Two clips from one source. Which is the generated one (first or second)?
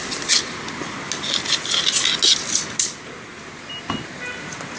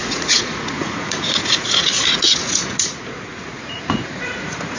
second